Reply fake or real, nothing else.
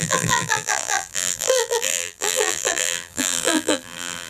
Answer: fake